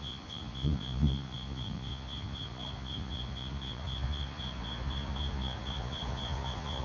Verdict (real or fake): fake